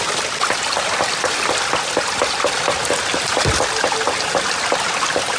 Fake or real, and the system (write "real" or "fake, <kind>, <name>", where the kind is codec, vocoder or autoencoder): real